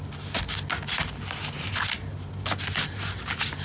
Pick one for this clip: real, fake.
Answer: real